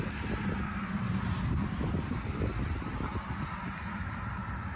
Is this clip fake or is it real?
real